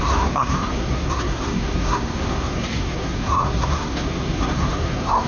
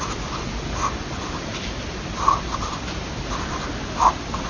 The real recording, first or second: second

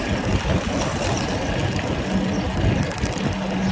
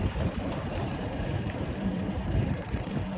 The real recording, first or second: first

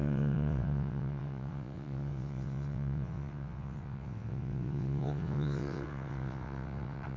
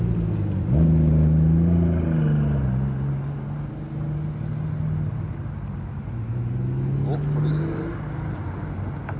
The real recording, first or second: second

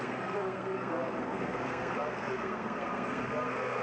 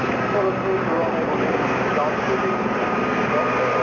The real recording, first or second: second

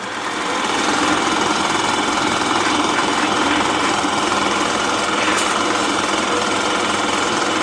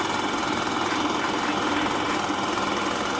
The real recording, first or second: second